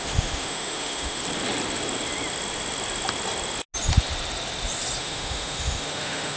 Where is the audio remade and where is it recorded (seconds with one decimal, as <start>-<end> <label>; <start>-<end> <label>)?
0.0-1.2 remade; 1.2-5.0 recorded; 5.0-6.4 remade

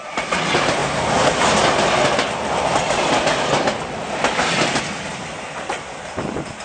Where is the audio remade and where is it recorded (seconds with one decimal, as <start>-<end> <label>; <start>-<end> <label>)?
0.0-6.6 recorded

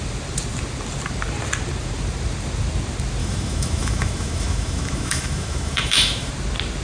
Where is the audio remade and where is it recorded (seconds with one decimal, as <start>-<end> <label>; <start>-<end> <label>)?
0.0-3.2 recorded; 3.2-6.3 remade; 6.3-6.8 recorded